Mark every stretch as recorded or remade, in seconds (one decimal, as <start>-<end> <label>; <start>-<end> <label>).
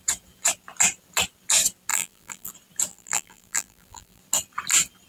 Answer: 0.0-1.9 recorded; 1.9-2.5 remade; 2.5-2.9 recorded; 2.9-4.2 remade; 4.2-5.1 recorded